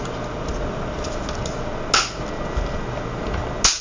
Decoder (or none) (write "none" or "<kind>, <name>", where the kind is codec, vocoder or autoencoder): none